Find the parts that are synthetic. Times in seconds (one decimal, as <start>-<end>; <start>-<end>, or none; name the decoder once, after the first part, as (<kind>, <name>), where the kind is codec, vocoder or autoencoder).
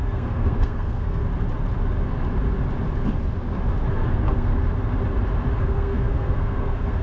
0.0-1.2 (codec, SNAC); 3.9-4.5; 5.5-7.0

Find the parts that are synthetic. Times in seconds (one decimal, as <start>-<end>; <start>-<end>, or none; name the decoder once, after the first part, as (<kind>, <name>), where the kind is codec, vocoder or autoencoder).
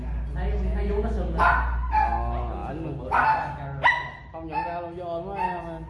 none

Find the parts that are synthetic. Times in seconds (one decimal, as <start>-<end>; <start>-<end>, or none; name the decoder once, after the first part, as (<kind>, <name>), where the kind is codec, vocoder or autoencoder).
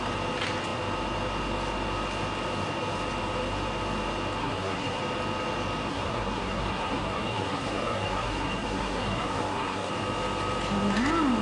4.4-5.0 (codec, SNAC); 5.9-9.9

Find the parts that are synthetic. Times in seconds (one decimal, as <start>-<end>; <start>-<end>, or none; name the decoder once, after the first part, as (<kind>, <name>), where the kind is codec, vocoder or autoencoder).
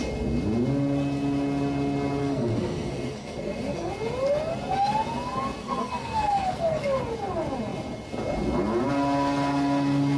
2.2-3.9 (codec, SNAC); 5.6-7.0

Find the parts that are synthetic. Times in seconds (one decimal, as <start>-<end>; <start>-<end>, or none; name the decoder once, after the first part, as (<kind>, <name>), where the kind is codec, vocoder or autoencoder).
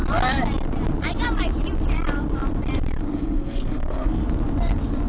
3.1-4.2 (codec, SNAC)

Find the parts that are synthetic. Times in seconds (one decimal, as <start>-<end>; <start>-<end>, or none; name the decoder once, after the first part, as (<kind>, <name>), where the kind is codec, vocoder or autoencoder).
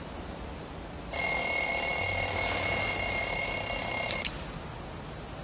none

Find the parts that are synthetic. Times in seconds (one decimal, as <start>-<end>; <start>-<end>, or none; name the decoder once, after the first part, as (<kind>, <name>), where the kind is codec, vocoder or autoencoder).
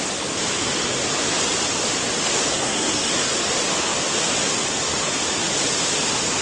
2.5-3.1 (codec, SNAC)